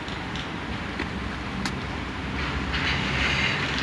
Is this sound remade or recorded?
recorded